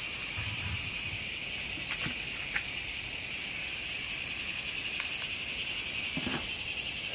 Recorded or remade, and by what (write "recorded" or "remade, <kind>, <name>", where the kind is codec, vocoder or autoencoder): recorded